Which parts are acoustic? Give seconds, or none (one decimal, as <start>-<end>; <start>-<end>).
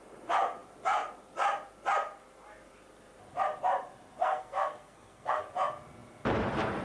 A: 0.0-4.2; 5.4-6.8